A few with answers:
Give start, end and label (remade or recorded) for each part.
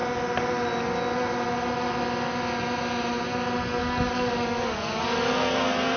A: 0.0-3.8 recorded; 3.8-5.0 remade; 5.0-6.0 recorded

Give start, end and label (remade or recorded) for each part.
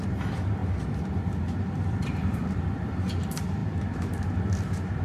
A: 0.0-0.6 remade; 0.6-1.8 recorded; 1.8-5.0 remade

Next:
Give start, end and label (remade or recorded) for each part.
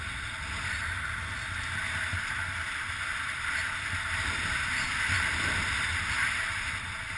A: 0.0-7.2 recorded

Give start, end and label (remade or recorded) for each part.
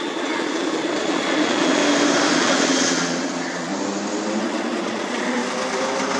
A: 0.0-1.8 remade; 1.8-2.3 recorded; 2.3-3.7 remade; 3.7-4.4 recorded; 4.4-5.4 remade; 5.4-6.2 recorded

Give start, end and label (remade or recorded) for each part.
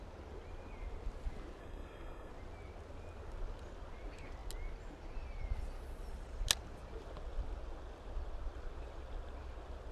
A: 0.0-1.6 recorded; 1.6-2.3 remade; 2.3-9.9 recorded